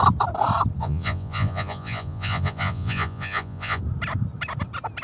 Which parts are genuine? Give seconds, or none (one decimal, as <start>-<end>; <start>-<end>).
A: 0.0-0.8; 3.8-5.0